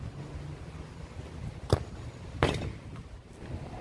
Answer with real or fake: real